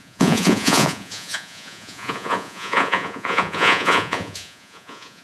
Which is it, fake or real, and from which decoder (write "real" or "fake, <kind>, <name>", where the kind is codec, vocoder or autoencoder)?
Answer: fake, vocoder, Vocos